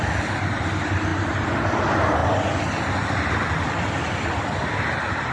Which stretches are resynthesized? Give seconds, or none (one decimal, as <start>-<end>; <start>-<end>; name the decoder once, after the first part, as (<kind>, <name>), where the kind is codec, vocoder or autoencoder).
none